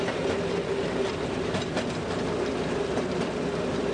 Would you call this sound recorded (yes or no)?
yes